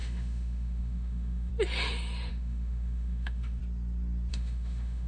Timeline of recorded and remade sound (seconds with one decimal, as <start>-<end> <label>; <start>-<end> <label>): 0.0-1.5 remade; 1.5-2.3 recorded; 2.3-3.6 remade; 3.6-4.3 recorded; 4.3-5.1 remade